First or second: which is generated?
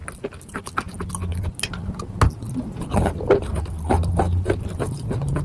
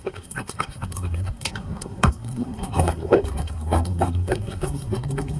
second